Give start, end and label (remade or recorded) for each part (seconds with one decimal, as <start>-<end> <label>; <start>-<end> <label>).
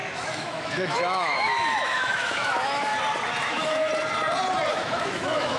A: 0.0-2.9 remade; 2.9-3.5 recorded; 3.5-3.9 remade; 3.9-4.7 recorded; 4.7-5.6 remade